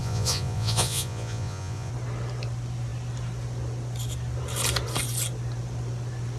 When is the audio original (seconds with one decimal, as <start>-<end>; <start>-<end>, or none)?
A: 1.9-6.4